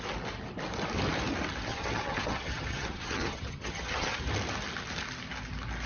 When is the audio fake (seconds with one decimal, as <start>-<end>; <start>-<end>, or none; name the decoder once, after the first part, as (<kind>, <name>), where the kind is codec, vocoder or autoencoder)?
1.7-4.2 (vocoder, HiFi-GAN)